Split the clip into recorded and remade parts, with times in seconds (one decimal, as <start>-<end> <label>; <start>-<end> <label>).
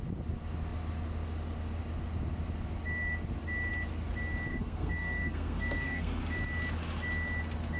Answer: 0.0-4.5 recorded; 4.5-6.2 remade; 6.2-7.8 recorded